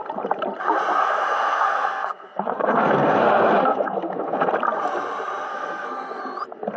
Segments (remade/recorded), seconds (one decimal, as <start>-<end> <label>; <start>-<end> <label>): 0.0-1.0 recorded; 1.0-4.5 remade; 4.5-5.5 recorded; 5.5-6.2 remade; 6.2-6.8 recorded